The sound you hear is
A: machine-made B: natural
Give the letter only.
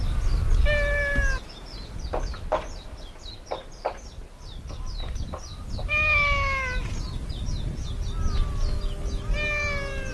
B